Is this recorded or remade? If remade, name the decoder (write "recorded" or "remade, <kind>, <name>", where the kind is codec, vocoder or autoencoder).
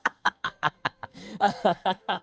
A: remade, codec, SNAC